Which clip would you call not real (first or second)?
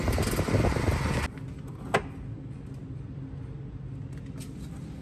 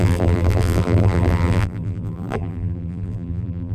second